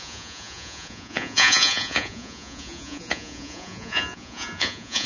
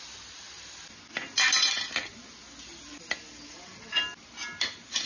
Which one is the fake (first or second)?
first